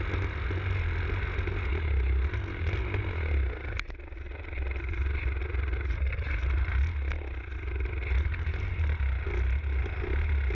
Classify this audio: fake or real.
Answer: real